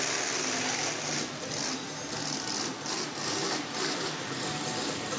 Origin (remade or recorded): recorded